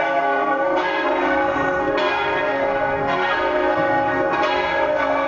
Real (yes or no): no